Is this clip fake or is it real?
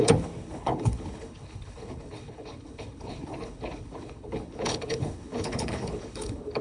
fake